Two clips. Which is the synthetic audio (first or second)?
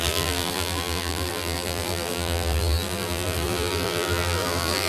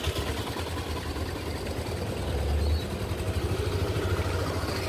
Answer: first